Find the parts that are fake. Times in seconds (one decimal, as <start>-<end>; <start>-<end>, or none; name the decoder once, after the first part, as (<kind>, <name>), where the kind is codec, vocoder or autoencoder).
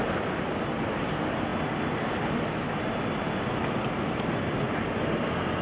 none